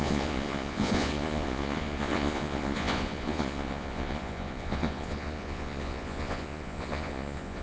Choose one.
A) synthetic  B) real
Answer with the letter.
A